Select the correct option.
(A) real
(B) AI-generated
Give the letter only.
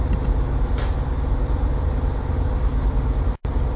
A